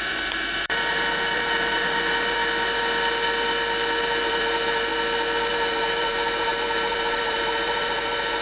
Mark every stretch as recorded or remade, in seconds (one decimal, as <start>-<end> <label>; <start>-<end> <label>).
0.0-2.4 remade; 2.4-4.0 recorded; 4.0-4.9 remade; 4.9-5.5 recorded; 5.5-8.4 remade